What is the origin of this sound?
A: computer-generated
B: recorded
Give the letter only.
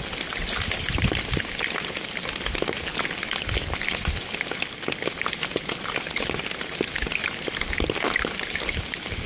B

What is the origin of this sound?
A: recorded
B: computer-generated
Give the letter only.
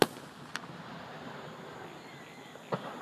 A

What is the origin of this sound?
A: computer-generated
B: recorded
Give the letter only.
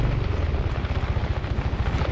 B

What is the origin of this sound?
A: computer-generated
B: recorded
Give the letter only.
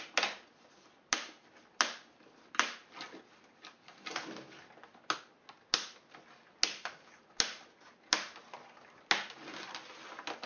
B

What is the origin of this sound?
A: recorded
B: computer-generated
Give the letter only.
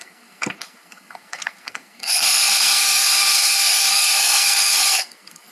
B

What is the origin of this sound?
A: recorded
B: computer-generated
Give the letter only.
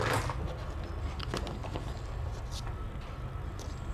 A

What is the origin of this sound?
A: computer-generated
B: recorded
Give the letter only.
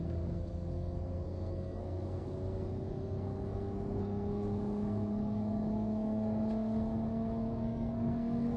A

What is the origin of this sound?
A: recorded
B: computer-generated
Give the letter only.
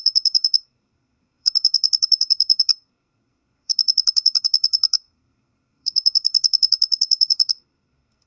B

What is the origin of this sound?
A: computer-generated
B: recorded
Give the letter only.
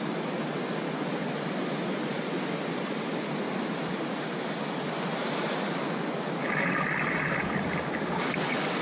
B